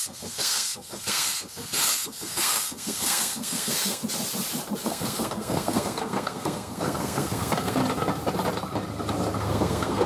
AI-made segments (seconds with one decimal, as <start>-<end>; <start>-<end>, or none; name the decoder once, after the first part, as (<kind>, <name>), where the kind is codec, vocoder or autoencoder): 0.0-4.0 (codec, SNAC); 4.8-7.8; 9.4-10.1